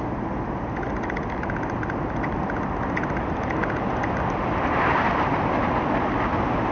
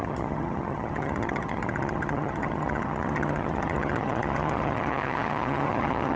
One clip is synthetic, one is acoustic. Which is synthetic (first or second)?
second